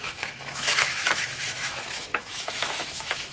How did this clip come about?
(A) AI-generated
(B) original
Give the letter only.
A